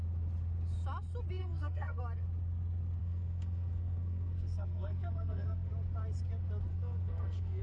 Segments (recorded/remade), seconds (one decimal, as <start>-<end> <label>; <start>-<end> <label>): 0.0-1.4 recorded; 1.4-2.0 remade; 2.0-3.0 recorded; 3.0-5.7 remade; 5.7-6.7 recorded; 6.7-7.6 remade